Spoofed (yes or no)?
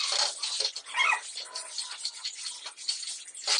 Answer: no